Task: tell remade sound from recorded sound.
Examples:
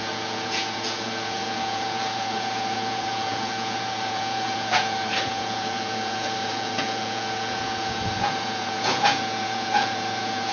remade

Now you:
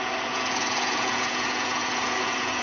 remade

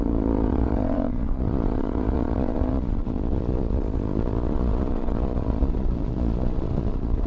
remade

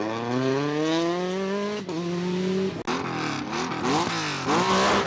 recorded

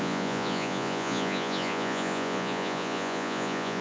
remade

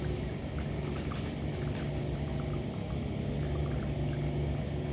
recorded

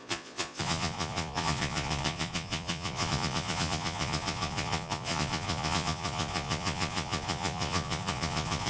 remade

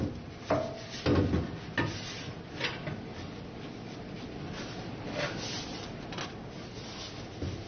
recorded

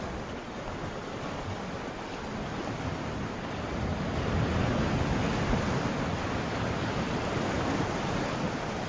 recorded